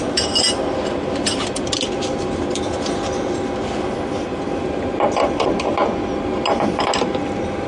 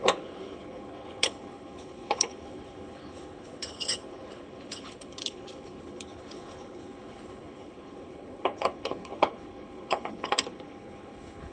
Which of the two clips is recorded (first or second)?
first